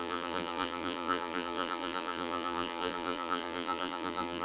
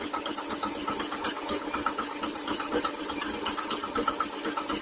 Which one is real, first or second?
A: second